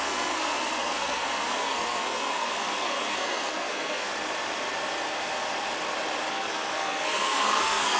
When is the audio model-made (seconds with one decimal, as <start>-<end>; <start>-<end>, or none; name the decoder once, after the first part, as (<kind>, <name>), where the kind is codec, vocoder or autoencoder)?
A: 0.0-4.1 (codec, SNAC); 6.3-8.0